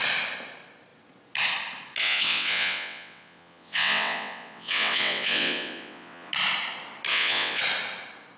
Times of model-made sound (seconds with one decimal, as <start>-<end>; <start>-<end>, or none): 2.0-6.3; 7.1-7.6